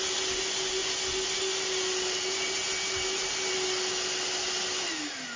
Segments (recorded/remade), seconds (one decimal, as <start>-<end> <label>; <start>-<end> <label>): 0.0-5.4 recorded